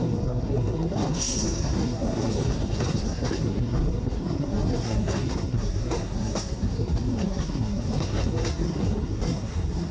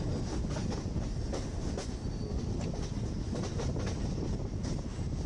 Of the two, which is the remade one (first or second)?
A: first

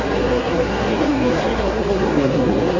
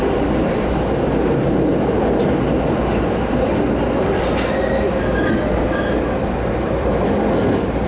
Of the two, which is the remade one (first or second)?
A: first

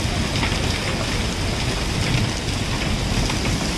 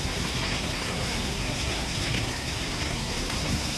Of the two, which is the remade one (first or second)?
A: second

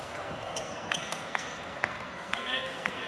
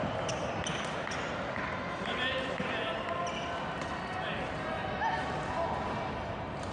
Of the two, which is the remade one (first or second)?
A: first